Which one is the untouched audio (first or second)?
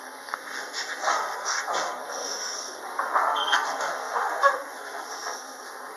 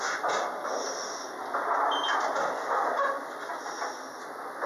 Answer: second